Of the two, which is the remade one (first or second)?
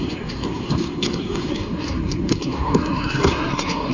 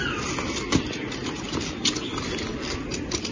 first